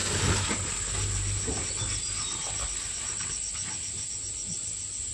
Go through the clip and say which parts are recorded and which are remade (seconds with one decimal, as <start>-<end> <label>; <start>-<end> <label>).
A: 0.0-0.7 remade; 0.7-5.1 recorded